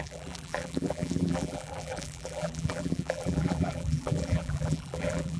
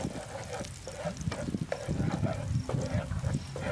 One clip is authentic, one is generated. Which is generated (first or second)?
first